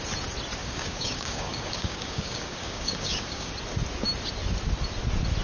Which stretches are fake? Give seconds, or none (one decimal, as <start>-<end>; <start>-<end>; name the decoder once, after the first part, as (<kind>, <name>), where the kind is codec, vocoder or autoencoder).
0.6-3.5 (codec, DAC)